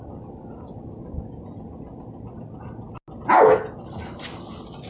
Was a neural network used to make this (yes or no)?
no